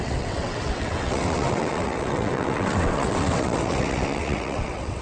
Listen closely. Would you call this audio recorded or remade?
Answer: remade